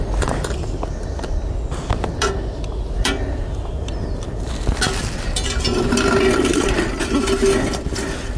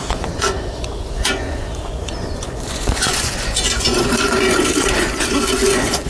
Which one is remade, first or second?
second